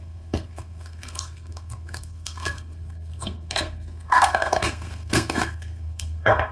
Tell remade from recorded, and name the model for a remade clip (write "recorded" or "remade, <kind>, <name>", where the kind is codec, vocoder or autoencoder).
remade, codec, SNAC